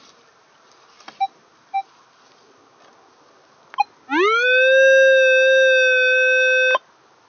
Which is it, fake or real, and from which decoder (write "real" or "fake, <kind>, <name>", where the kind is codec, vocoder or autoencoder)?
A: real